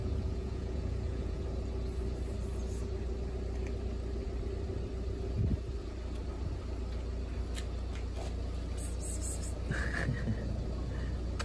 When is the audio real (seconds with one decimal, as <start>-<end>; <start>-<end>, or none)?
1.4-11.4